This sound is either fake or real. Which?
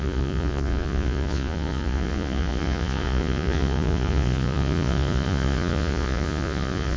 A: fake